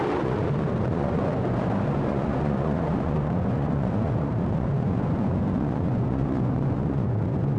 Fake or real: fake